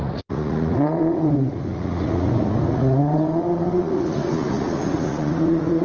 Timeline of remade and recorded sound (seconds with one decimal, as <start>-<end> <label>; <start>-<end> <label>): 0.0-5.8 remade